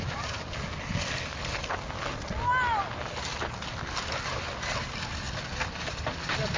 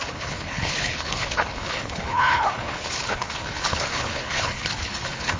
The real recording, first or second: first